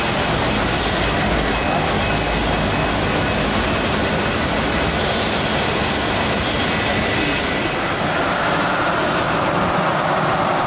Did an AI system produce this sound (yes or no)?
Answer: no